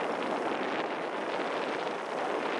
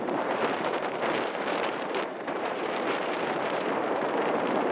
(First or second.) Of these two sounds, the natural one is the first